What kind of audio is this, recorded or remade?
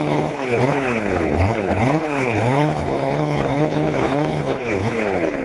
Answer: remade